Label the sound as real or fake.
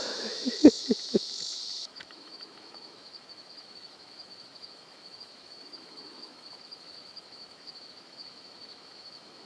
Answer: fake